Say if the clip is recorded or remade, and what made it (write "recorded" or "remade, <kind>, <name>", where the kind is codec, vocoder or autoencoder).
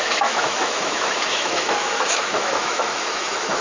remade, autoencoder, DAC-VAE